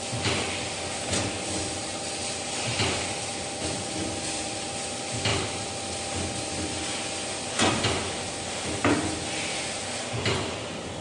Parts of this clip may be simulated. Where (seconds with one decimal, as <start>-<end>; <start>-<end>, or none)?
none